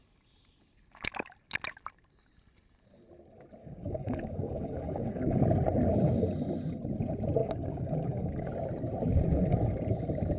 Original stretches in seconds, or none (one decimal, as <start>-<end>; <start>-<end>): 0.0-3.6; 5.4-7.4; 8.5-10.4